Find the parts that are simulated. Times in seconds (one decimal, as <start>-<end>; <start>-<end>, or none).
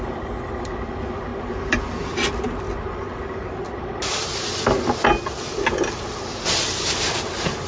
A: none